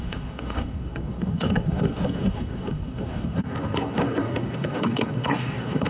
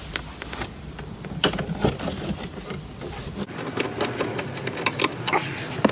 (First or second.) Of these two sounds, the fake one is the first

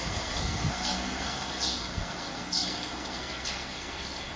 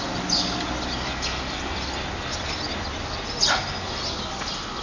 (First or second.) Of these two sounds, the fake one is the first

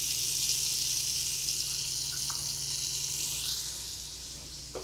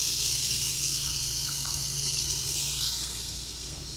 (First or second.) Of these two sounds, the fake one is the second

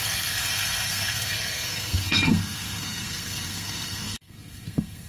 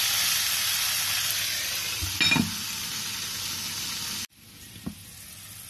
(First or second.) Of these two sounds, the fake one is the first